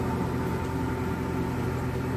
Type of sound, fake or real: real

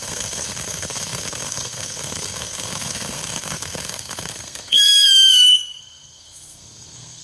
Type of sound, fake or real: fake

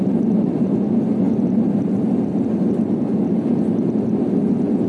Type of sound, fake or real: real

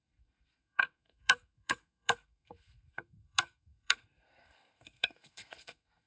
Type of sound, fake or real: fake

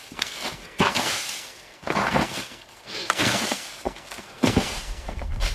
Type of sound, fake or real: fake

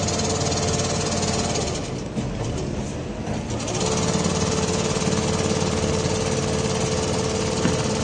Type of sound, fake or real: real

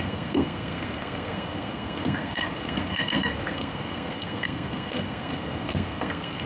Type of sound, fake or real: fake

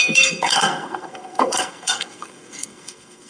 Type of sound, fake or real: fake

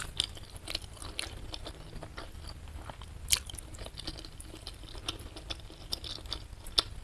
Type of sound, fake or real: real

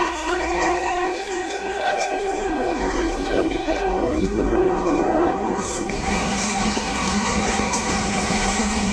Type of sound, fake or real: fake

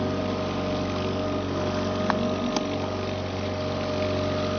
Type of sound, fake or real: real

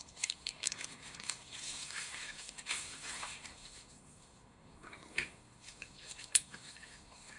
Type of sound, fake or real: fake